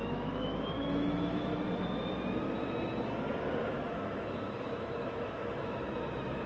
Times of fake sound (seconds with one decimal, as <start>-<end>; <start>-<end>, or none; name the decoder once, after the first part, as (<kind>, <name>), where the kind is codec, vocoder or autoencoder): 0.0-1.5 (autoencoder, DAC-VAE); 3.6-6.5

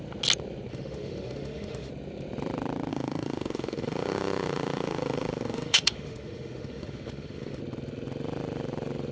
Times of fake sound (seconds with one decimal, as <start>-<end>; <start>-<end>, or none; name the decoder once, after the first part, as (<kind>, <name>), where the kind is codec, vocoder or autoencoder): 0.7-1.9 (autoencoder, DAC-VAE); 2.9-7.6